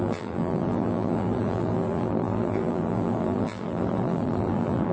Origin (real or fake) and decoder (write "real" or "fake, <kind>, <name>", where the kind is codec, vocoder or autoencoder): fake, vocoder, BigVGAN v2